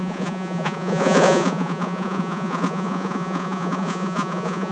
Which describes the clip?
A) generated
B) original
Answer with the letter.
A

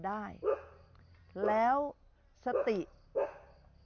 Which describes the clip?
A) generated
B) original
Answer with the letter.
B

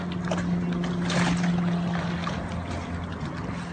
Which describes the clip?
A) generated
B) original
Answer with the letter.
B